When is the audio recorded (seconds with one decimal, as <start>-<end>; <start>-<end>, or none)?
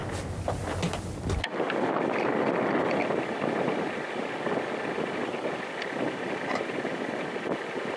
0.0-8.0